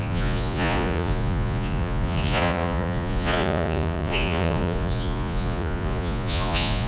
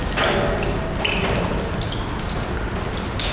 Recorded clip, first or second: second